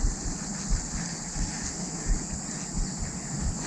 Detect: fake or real real